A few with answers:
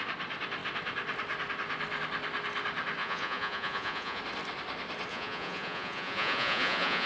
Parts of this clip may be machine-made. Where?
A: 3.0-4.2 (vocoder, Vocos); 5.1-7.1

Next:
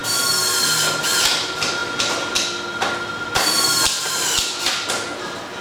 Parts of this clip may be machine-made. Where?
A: none

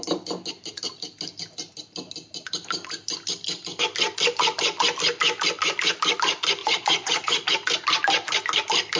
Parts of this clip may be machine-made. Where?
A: 6.6-7.5 (vocoder, Vocos)